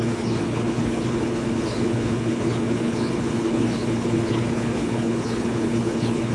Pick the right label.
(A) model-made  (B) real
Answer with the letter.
A